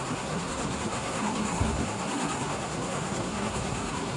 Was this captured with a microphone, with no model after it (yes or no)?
no